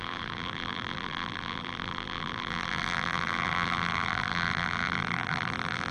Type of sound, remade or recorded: remade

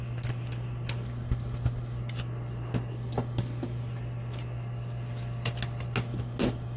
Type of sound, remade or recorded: recorded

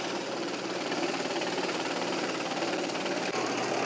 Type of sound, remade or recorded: remade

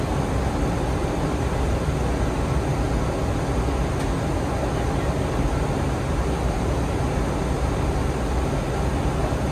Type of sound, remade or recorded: recorded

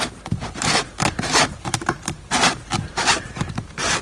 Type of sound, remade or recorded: remade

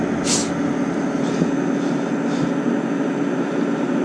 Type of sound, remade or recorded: recorded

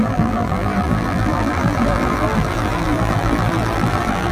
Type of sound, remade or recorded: remade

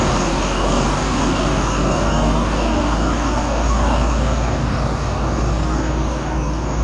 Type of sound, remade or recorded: remade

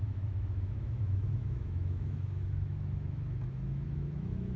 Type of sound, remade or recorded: remade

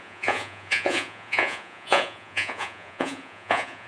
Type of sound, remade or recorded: remade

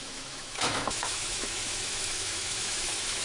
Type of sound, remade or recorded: remade